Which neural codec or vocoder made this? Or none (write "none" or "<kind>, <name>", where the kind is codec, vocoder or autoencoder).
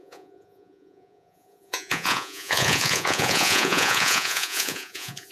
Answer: vocoder, Vocos